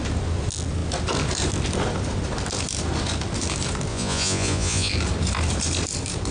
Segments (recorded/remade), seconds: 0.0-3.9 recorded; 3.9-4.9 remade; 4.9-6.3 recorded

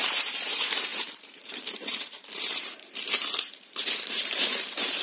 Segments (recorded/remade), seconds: 0.0-5.0 remade

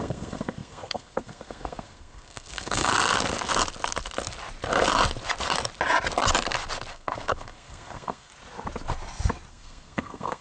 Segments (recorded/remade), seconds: 0.0-2.9 remade; 2.9-6.9 recorded; 6.9-8.3 remade; 8.3-9.5 recorded; 9.5-10.4 remade

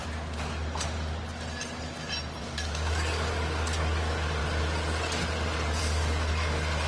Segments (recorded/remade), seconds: 0.0-2.4 recorded; 2.4-4.4 remade; 4.4-5.8 recorded; 5.8-6.9 remade

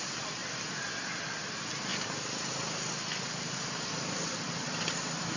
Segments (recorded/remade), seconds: 0.0-5.4 recorded

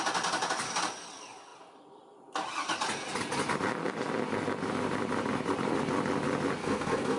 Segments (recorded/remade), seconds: 0.0-6.6 recorded; 6.6-7.2 remade

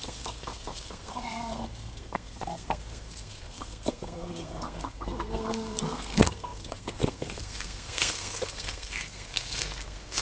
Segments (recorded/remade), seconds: 0.0-10.2 remade